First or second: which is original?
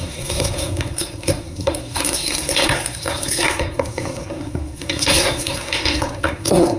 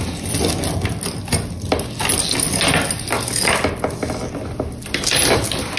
second